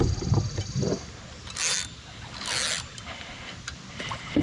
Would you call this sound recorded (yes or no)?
yes